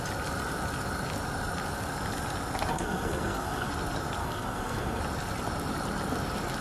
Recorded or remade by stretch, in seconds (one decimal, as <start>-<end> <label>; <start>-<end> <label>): 0.0-2.7 recorded; 2.7-3.7 remade; 3.7-4.2 recorded; 4.2-5.0 remade; 5.0-6.6 recorded